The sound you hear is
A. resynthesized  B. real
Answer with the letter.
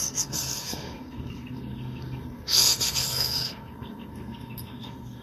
A